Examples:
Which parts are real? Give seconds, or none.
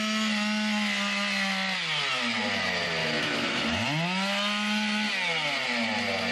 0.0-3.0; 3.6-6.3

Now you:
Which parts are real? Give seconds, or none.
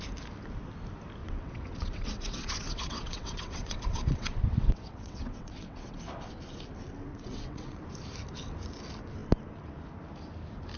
0.0-1.2; 6.0-7.1; 7.8-10.8